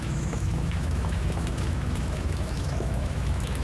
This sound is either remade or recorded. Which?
remade